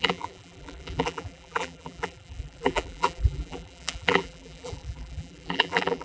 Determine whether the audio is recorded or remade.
remade